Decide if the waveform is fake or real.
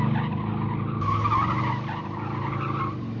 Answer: real